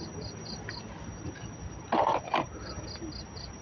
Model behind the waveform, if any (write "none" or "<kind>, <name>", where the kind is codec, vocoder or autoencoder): none